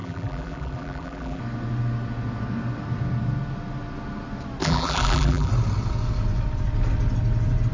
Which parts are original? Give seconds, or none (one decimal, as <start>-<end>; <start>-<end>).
1.4-4.6; 5.5-7.7